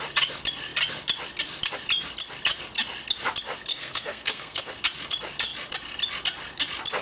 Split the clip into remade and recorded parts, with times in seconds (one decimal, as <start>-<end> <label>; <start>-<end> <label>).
0.0-3.7 recorded; 3.7-4.7 remade; 4.7-7.0 recorded